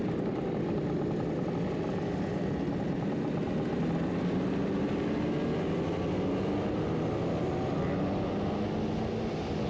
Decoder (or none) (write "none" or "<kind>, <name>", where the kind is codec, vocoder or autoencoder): none